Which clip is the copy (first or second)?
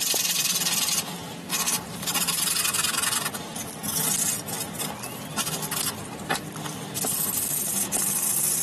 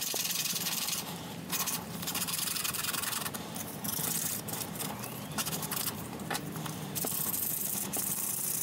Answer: second